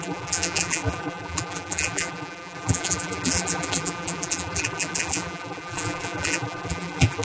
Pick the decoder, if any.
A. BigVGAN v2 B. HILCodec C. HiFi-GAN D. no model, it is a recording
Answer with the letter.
A